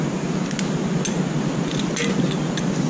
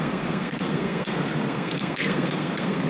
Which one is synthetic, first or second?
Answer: second